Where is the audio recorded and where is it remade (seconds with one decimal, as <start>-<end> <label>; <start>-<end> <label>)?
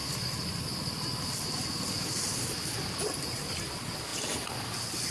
0.0-5.1 recorded